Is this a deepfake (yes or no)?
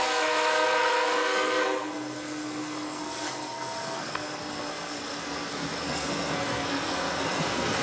yes